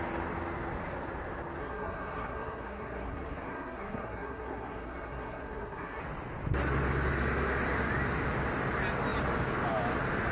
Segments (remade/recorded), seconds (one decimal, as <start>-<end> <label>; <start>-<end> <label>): 0.0-1.6 recorded; 1.6-6.0 remade; 6.0-10.3 recorded